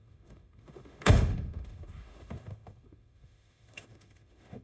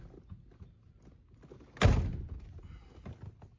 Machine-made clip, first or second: first